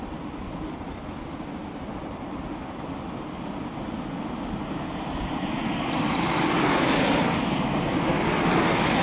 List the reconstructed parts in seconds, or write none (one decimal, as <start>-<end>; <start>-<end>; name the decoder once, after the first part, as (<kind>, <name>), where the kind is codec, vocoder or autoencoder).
none